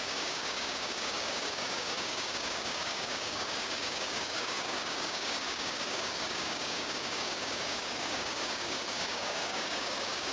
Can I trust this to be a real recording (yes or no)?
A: no